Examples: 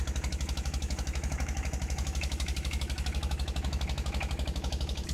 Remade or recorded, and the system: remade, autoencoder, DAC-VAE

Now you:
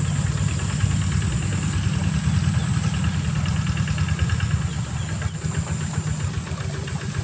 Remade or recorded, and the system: recorded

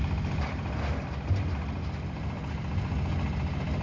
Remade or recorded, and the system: recorded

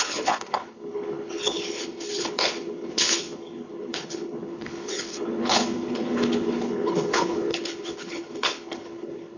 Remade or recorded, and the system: remade, codec, HILCodec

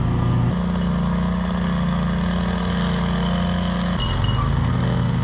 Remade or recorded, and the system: recorded